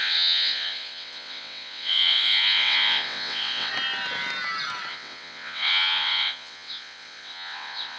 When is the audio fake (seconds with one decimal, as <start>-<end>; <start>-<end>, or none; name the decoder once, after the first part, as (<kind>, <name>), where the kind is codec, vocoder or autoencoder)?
0.0-3.7 (vocoder, WaveNeXt); 4.9-8.0